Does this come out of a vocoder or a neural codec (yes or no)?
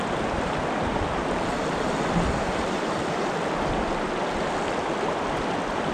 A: no